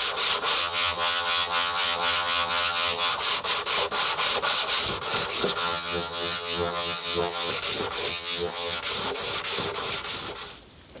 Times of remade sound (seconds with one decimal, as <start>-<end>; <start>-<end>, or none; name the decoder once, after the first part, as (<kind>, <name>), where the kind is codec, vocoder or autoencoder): 0.6-3.1 (vocoder, HiFi-GAN); 5.6-7.5; 8.1-8.8

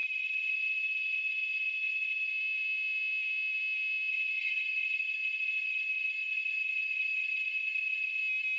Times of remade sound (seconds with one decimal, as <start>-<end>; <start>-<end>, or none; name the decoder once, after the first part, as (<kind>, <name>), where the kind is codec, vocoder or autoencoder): 0.0-2.3 (vocoder, HiFi-GAN); 4.1-8.2

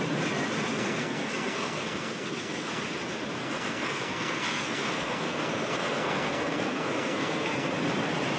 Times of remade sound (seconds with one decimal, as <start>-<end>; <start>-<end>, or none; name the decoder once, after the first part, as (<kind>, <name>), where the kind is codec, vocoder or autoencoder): 0.7-2.8 (codec, SNAC); 3.4-7.7

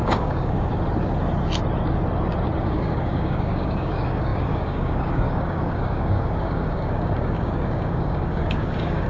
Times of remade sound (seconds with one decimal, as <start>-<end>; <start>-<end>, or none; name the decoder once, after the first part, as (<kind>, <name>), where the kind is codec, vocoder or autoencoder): 0.0-0.7 (codec, DAC); 2.6-9.1

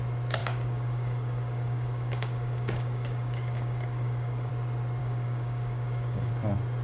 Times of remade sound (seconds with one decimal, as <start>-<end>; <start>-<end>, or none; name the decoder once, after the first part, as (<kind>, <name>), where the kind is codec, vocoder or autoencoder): 0.4-4.5 (codec, DAC); 5.0-6.3

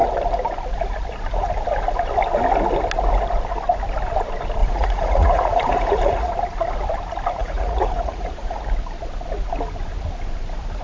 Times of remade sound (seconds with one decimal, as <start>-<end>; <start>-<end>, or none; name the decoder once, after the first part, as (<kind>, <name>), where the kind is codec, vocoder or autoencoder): 4.6-6.3 (vocoder, Vocos); 7.4-8.6

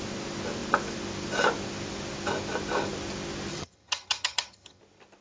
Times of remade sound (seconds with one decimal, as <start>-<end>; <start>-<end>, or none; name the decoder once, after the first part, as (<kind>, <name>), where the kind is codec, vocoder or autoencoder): 3.5-4.8 (vocoder, HiFi-GAN)

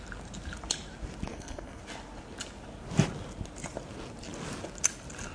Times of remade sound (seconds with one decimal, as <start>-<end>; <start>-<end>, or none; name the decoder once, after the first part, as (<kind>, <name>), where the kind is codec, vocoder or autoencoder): 1.3-1.8 (codec, SNAC)